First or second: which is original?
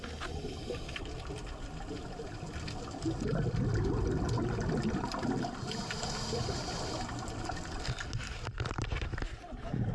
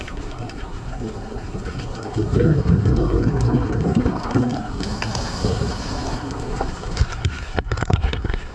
first